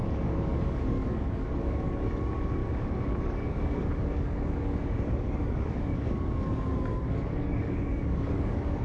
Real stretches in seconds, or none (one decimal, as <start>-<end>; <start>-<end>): none